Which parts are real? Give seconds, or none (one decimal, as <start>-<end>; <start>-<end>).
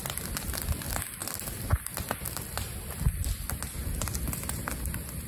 0.0-5.3